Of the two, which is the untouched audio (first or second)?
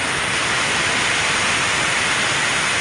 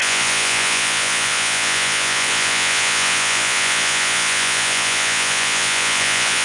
first